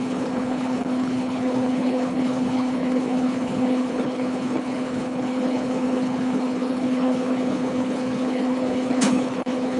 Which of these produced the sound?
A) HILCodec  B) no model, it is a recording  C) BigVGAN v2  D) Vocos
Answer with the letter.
A